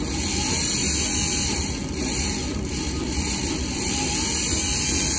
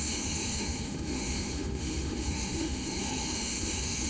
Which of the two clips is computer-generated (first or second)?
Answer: second